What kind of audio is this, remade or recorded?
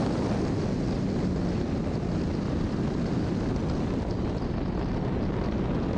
recorded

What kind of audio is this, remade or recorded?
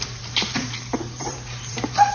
remade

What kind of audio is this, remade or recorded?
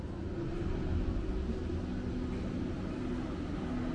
recorded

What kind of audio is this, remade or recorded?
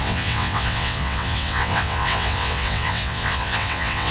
remade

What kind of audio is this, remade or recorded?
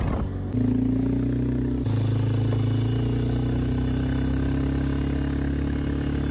recorded